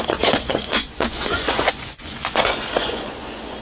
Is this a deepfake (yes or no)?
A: yes